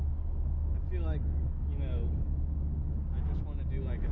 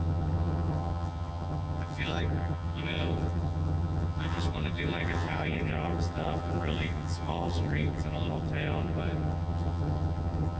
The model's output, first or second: second